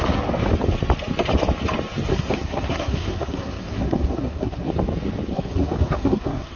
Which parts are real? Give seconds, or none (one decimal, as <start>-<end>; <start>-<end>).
0.0-2.1; 4.7-5.3